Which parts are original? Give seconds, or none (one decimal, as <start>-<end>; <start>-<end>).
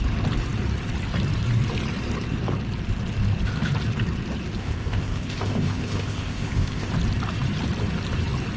0.0-4.6; 6.9-8.6